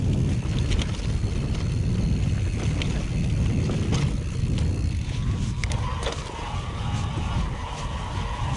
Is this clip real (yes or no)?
yes